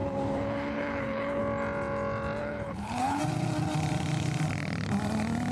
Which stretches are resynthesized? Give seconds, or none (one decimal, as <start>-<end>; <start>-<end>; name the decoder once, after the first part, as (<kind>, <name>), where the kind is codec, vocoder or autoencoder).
0.0-1.4 (codec, HILCodec); 2.4-3.2